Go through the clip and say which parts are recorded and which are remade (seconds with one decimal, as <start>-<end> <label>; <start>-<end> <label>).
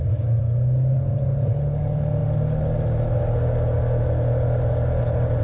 0.0-5.4 recorded